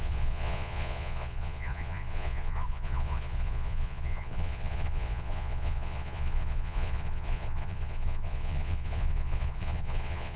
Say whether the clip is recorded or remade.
remade